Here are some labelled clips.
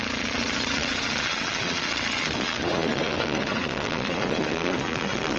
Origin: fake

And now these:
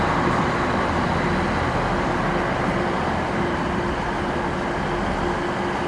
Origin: real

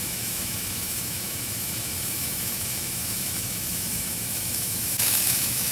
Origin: fake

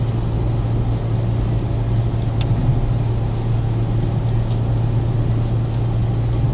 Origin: real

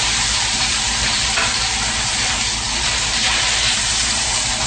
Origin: fake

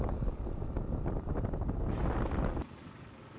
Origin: real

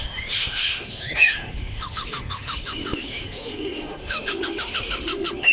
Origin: fake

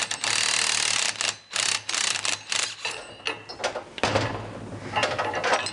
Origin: real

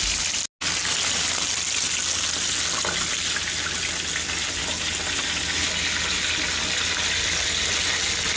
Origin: real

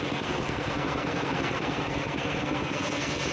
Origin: fake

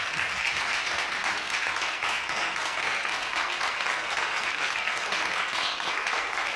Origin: fake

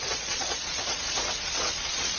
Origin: fake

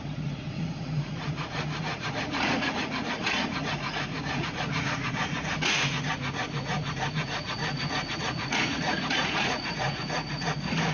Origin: fake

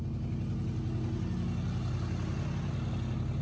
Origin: real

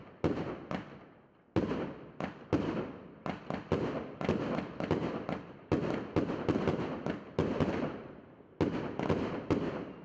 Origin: real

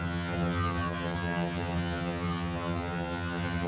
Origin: fake